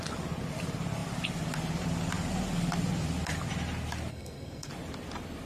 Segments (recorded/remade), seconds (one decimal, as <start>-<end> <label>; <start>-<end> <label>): 0.0-4.1 recorded; 4.1-4.7 remade; 4.7-5.5 recorded